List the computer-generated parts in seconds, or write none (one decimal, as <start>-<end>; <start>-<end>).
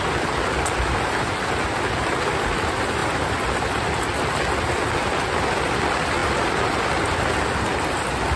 none